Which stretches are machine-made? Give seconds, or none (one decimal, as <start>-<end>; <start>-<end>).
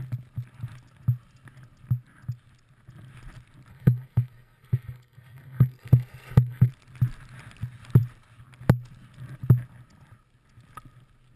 3.7-6.7